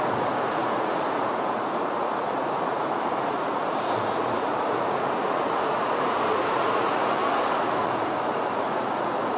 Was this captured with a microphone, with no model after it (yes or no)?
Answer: no